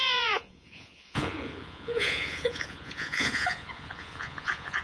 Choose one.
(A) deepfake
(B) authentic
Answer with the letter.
A